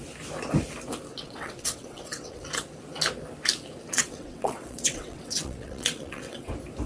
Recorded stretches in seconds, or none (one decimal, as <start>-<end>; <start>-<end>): 0.0-1.1; 2.4-3.9; 6.5-6.9